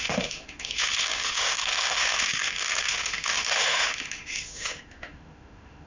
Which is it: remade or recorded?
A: remade